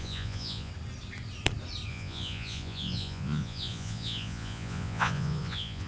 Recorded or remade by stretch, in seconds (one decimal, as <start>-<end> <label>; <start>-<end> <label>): 0.0-0.7 remade; 0.7-1.9 recorded; 1.9-5.9 remade